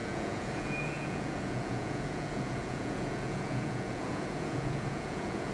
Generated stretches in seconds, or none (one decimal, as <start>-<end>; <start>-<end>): 0.0-5.5